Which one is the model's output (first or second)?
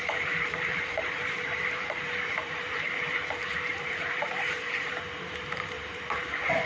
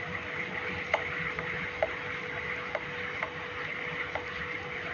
first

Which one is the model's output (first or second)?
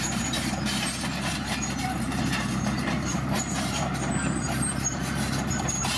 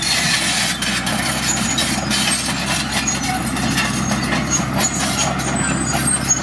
first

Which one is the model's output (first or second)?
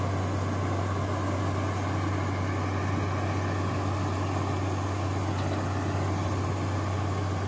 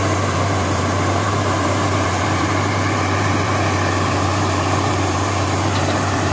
second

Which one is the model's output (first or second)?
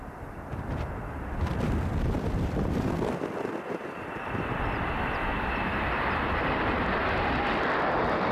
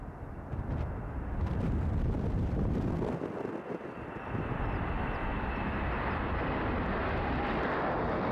first